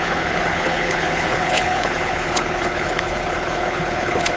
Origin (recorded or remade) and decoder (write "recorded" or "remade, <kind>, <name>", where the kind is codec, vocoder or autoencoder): remade, codec, HILCodec